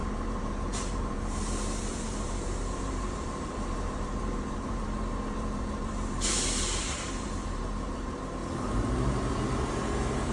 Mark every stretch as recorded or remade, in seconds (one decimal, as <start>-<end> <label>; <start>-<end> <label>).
0.0-8.4 remade; 8.4-9.7 recorded; 9.7-10.3 remade